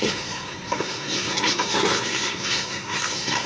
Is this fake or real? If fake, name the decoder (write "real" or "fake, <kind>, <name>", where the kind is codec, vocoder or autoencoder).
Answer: fake, codec, SNAC